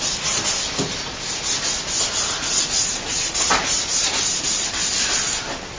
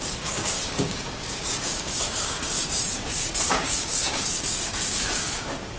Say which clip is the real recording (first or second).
first